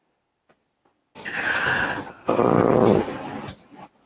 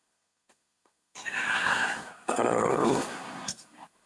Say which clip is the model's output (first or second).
second